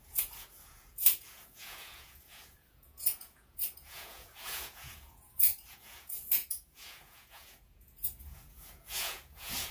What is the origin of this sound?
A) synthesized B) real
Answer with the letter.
A